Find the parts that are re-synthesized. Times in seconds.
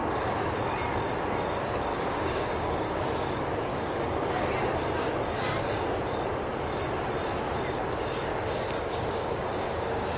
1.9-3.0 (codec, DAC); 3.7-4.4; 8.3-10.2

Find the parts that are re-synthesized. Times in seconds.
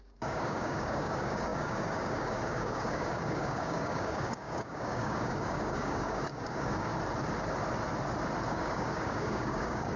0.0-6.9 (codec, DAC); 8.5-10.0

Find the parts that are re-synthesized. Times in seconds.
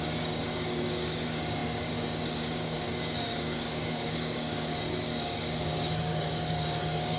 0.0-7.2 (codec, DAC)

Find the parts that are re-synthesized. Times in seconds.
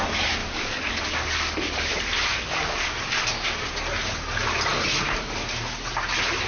0.4-1.9 (codec, DAC); 2.3-3.0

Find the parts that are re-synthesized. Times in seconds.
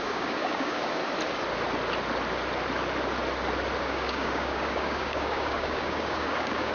0.0-1.0 (codec, DAC); 3.8-6.7